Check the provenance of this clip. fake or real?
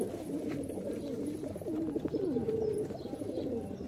fake